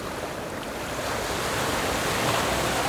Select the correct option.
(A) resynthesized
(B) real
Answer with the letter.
B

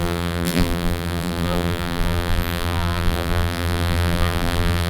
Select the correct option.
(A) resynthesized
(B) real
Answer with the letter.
A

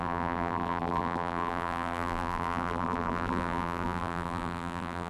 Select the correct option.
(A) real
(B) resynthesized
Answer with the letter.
B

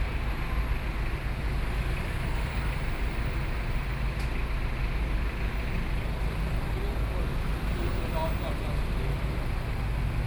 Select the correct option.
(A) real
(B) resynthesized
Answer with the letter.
A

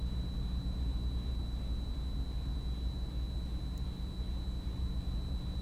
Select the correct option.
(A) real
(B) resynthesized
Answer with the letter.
A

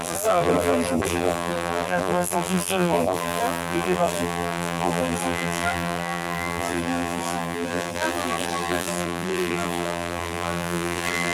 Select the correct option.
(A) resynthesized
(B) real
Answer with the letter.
A